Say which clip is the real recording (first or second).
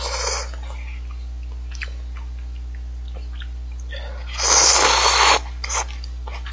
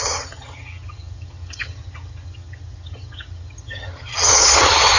first